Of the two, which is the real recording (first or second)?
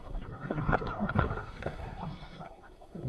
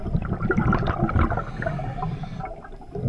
second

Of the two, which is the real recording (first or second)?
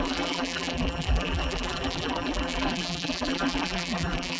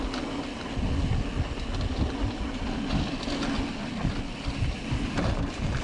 second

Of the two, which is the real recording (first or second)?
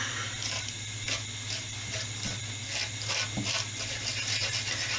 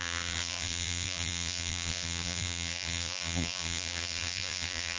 first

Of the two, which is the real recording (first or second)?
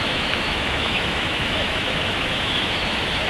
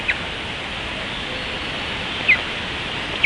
second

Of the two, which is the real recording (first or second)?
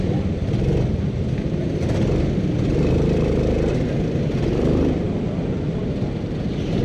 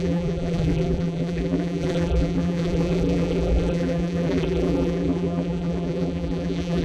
first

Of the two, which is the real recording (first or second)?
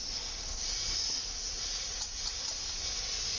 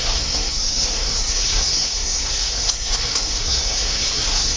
first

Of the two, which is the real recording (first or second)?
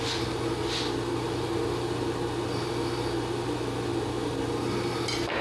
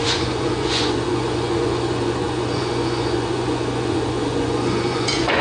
first